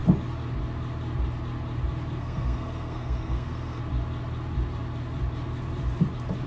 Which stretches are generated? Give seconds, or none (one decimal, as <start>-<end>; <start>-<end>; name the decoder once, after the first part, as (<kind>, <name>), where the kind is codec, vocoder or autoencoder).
2.2-3.8 (codec, SNAC)